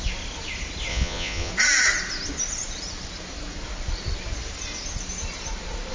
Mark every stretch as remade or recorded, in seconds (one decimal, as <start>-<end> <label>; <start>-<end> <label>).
0.0-0.9 recorded; 0.9-1.5 remade; 1.5-5.9 recorded